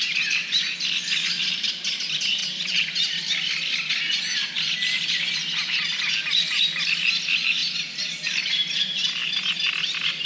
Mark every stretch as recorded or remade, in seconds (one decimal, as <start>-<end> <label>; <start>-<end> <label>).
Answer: 0.0-10.3 recorded